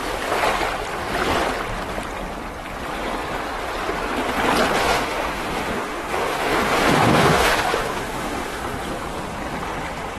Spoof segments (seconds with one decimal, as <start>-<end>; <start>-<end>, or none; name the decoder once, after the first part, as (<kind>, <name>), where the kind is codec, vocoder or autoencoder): 4.8-8.6 (autoencoder, DAC-VAE)